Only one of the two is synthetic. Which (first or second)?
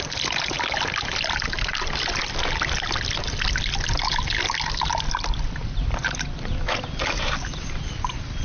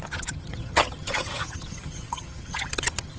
second